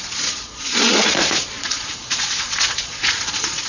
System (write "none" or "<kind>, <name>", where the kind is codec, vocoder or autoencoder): vocoder, Vocos